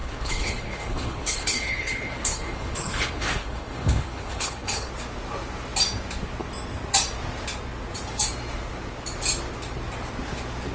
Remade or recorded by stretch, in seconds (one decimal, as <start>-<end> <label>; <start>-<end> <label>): 0.0-4.9 remade; 4.9-10.7 recorded